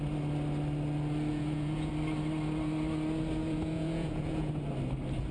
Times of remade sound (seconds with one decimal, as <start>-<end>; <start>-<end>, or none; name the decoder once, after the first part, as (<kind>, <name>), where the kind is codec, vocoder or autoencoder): 1.3-1.9 (vocoder, Vocos); 3.4-4.5